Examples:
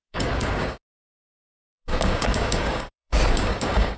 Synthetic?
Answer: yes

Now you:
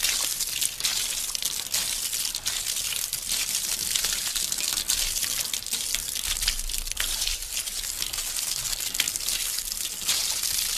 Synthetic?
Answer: no